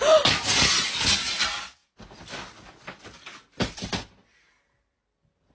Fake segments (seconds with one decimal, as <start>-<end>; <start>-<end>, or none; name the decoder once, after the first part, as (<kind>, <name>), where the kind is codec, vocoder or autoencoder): none